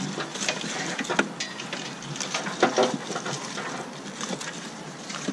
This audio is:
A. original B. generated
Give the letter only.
A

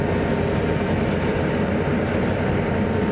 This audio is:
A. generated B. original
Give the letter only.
B